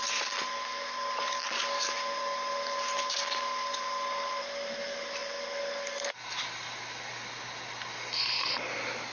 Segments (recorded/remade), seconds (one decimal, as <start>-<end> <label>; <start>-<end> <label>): 0.0-9.1 recorded